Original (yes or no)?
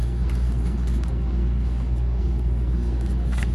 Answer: no